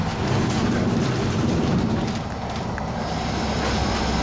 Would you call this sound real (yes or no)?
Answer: yes